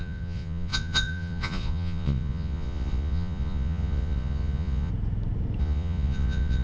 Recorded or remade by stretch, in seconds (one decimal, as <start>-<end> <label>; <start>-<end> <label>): 0.0-4.9 remade; 4.9-5.6 recorded; 5.6-6.6 remade